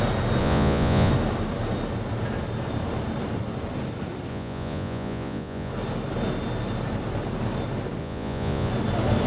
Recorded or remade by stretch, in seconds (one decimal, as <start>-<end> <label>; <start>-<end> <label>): 0.0-0.4 recorded; 0.4-1.1 remade; 1.1-4.3 recorded; 4.3-5.7 remade; 5.7-8.0 recorded; 8.0-8.7 remade; 8.7-9.3 recorded